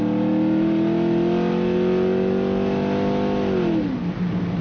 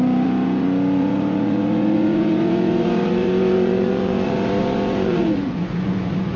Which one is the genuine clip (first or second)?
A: first